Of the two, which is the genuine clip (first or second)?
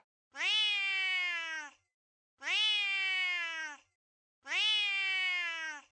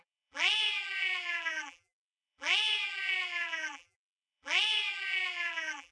first